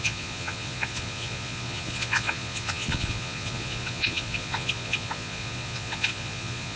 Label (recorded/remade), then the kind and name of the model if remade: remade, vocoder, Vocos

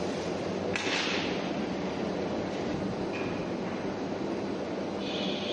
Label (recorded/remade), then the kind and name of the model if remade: recorded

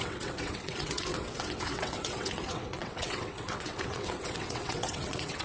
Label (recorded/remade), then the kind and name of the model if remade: remade, vocoder, WaveNeXt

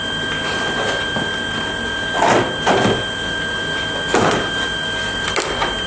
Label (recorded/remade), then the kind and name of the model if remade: recorded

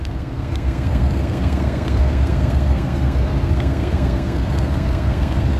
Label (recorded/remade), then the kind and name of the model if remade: remade, codec, SNAC